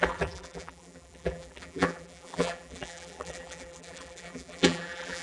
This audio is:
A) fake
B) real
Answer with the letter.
A